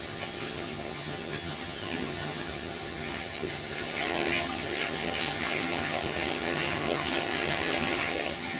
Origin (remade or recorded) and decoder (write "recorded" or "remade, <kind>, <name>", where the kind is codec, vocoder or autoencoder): remade, vocoder, HiFi-GAN